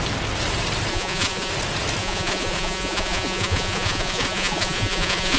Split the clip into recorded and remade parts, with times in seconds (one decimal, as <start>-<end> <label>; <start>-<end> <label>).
0.0-0.9 recorded; 0.9-1.5 remade; 1.5-2.0 recorded; 2.0-5.4 remade